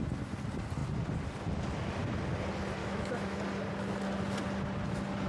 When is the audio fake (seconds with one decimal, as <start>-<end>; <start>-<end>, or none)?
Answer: 2.8-3.4